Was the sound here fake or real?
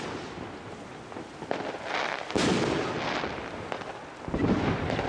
real